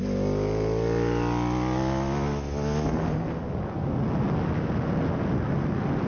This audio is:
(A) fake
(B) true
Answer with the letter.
B